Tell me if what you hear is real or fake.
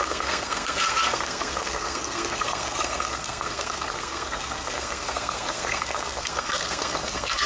fake